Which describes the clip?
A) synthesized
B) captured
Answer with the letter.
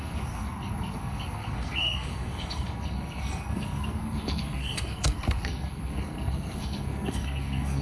A